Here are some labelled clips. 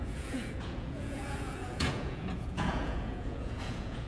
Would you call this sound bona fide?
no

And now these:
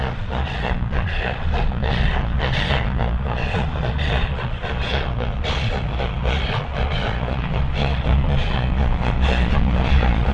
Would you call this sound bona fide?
no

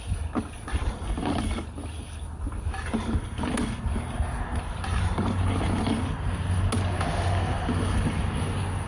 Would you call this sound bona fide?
yes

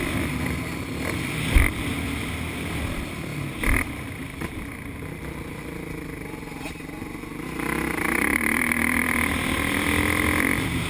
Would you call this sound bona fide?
yes